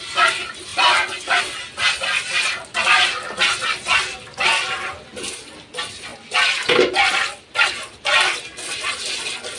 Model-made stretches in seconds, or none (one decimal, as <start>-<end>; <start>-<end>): 0.7-1.4